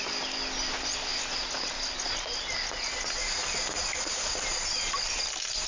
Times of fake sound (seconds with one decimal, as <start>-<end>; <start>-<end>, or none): none